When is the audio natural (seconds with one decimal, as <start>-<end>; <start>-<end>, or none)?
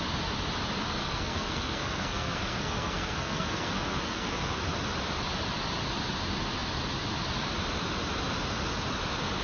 0.0-1.0; 4.6-9.4